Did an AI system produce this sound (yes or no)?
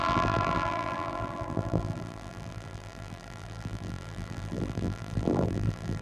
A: yes